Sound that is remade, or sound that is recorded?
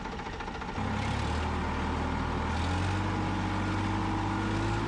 recorded